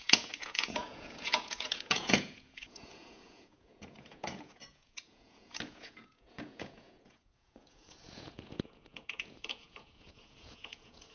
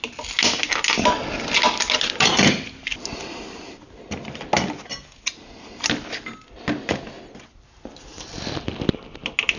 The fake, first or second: first